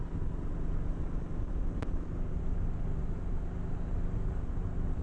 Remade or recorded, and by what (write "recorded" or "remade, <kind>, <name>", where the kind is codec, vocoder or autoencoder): recorded